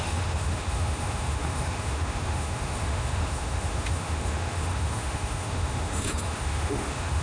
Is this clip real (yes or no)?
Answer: no